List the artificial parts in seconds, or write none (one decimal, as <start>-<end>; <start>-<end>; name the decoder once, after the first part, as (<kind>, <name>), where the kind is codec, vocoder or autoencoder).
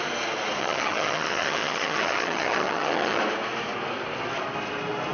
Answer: 0.6-3.2 (vocoder, HiFi-GAN)